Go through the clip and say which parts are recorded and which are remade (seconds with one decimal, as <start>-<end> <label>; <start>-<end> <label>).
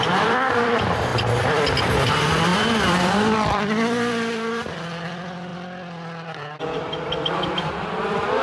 0.0-1.1 remade; 1.1-2.1 recorded; 2.1-8.4 remade